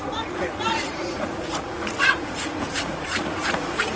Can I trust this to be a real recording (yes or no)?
no